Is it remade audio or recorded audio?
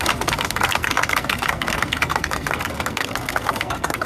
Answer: remade